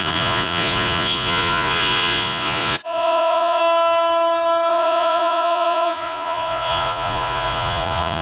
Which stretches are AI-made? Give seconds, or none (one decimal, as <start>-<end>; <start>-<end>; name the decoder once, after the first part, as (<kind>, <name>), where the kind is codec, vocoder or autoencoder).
0.0-3.6 (vocoder, Vocos); 4.7-8.2